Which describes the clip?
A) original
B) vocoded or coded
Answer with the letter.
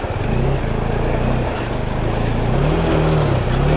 A